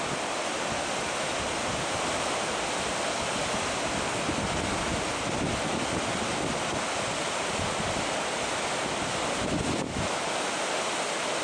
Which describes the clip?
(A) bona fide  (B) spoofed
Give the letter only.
A